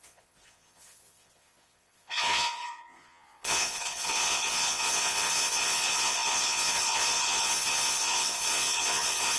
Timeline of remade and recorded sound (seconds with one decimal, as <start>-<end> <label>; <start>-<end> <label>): 0.0-9.4 remade

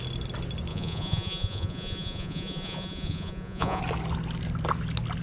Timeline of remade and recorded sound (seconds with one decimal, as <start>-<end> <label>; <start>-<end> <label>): 0.0-0.7 recorded; 0.7-3.8 remade; 3.8-5.2 recorded

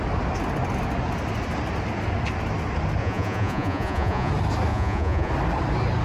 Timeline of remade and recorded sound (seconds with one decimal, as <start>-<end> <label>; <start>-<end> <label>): 0.0-3.0 recorded; 3.0-4.3 remade; 4.3-4.7 recorded; 4.7-5.3 remade; 5.3-6.0 recorded